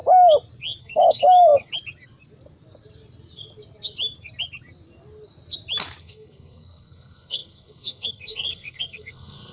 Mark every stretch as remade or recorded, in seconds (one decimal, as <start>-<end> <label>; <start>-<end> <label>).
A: 0.0-0.8 recorded; 0.8-1.7 remade; 1.7-6.0 recorded; 6.0-9.5 remade